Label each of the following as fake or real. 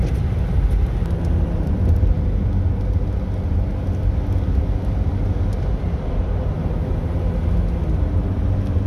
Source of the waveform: real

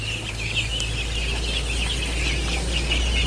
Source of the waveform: real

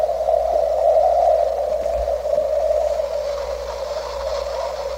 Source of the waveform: real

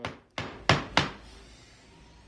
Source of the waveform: real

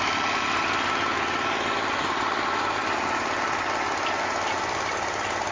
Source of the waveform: real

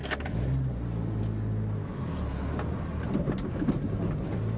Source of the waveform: real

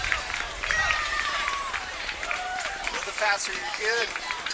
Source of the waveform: fake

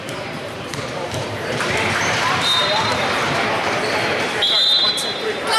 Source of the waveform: fake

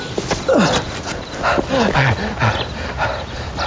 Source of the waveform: real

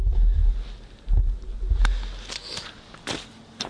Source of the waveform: real